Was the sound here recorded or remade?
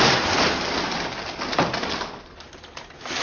recorded